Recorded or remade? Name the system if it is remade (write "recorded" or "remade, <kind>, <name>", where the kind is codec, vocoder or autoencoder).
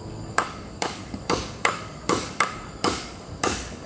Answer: remade, codec, DAC